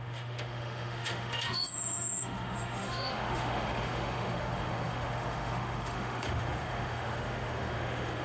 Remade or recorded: remade